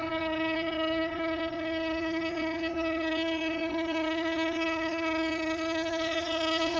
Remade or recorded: remade